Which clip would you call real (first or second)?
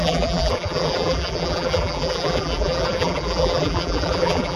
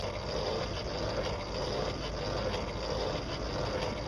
second